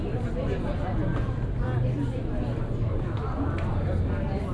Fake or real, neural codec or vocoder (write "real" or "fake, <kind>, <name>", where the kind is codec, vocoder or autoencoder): real